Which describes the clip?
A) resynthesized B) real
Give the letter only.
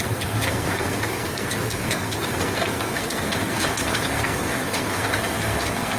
A